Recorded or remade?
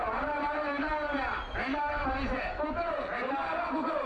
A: recorded